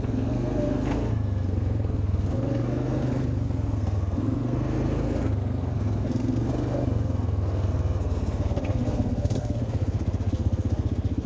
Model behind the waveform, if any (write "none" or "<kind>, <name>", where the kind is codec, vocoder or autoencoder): codec, SNAC